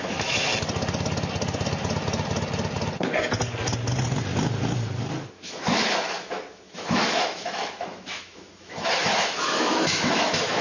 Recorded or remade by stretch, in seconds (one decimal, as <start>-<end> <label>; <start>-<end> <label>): 0.0-0.5 remade; 0.5-5.3 recorded; 5.3-10.6 remade